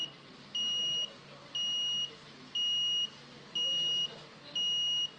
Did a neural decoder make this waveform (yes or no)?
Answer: no